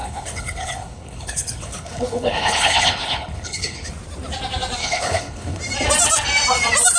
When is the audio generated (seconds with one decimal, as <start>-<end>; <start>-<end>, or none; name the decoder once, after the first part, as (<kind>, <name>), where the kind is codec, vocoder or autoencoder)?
0.0-3.9 (codec, HILCodec); 4.8-5.6